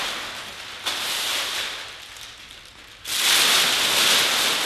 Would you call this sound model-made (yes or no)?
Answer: no